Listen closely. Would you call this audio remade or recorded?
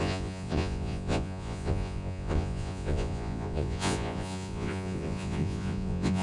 remade